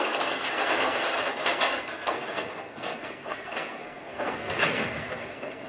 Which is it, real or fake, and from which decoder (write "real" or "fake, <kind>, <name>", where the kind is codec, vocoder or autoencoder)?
fake, codec, SNAC